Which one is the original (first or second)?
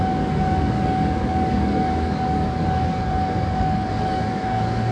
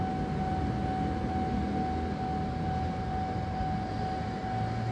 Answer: second